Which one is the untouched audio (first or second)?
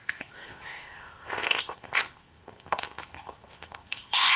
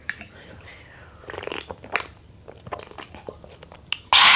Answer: second